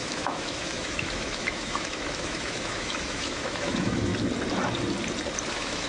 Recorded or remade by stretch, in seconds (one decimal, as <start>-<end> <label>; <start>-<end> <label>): 0.0-4.1 remade; 4.1-5.5 recorded; 5.5-5.9 remade